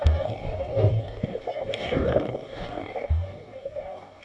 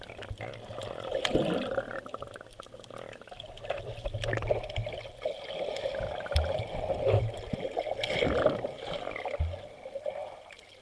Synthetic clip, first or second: first